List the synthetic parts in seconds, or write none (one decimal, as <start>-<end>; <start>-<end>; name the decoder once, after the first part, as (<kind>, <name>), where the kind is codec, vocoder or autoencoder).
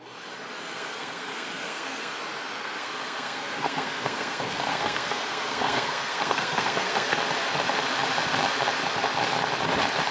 0.7-2.2 (codec, SNAC); 2.6-7.2